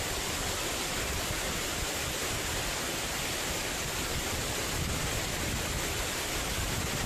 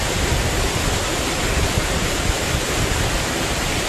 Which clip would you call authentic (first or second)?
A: second